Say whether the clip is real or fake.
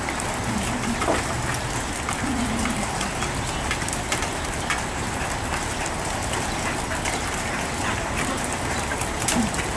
real